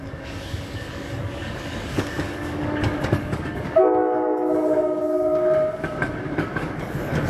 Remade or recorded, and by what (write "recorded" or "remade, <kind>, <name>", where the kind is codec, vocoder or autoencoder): remade, codec, DAC